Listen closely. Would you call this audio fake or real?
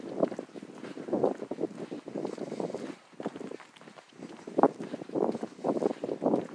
real